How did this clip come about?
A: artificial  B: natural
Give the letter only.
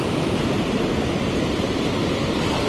B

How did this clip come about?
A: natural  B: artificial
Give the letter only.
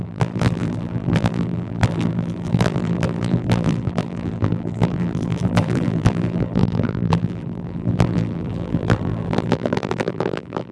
B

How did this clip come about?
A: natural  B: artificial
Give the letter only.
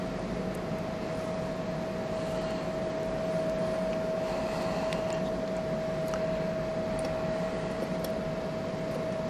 A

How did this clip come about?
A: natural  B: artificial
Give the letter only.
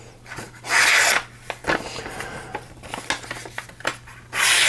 A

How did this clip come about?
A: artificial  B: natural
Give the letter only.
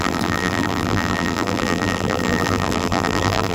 A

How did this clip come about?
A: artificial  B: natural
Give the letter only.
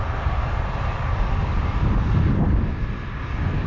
B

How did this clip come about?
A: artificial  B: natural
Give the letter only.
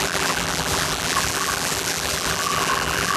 A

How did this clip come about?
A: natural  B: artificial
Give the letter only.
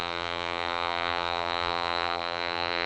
B